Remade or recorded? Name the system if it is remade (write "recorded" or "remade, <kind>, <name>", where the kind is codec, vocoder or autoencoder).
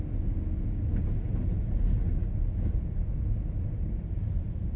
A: recorded